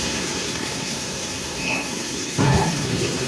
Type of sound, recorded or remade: remade